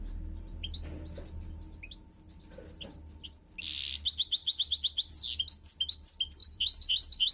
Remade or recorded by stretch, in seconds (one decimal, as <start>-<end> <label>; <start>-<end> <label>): 0.0-4.4 recorded; 4.4-5.1 remade; 5.1-6.4 recorded; 6.4-7.3 remade